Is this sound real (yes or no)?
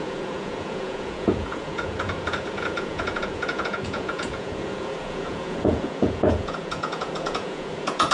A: no